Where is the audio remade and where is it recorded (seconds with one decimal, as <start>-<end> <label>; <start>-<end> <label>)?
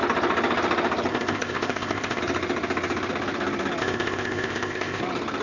0.0-1.1 recorded; 1.1-2.2 remade; 2.2-3.8 recorded; 3.8-5.0 remade; 5.0-5.4 recorded